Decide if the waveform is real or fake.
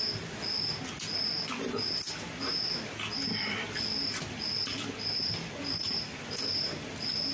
real